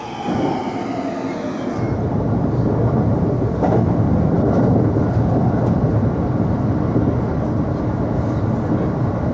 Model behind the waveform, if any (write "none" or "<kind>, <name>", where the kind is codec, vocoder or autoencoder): none